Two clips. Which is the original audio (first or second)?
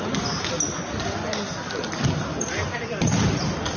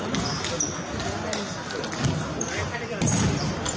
second